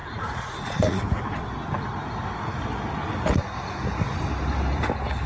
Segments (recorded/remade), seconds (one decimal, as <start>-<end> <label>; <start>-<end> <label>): 0.0-1.0 remade; 1.0-5.3 recorded

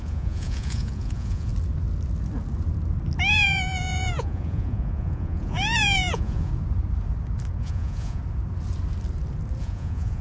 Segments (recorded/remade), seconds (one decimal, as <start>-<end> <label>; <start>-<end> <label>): 0.0-1.5 remade; 1.5-3.3 recorded; 3.3-6.5 remade; 6.5-7.6 recorded; 7.6-8.2 remade; 8.2-9.6 recorded; 9.6-10.2 remade

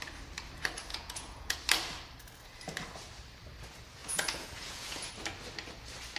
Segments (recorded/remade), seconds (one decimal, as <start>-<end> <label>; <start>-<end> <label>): 0.0-0.9 recorded; 0.9-1.6 remade; 1.6-4.0 recorded; 4.0-5.1 remade; 5.1-6.2 recorded

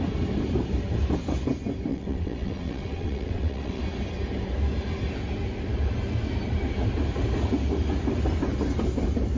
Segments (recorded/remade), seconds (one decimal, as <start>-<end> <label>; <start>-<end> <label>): 0.0-1.9 recorded; 1.9-3.8 remade; 3.8-9.4 recorded